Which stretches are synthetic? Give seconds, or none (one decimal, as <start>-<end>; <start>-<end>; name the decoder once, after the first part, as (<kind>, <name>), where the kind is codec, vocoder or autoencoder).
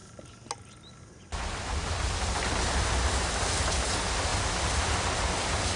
none